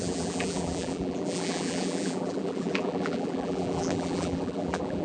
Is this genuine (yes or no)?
no